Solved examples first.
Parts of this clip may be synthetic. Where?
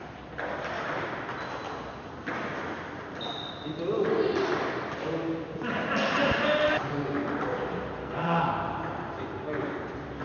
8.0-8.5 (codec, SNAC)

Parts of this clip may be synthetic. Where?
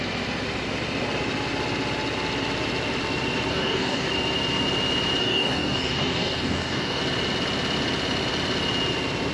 3.5-4.1 (codec, DAC); 5.2-7.0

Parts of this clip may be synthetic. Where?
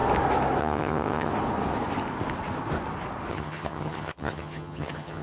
0.6-1.3 (vocoder, HiFi-GAN); 3.3-5.2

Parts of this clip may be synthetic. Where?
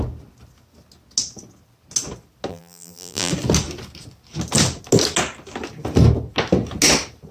2.5-3.3 (vocoder, BigVGAN v2)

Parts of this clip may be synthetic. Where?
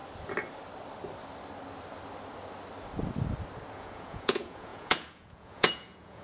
3.7-6.2 (vocoder, Vocos)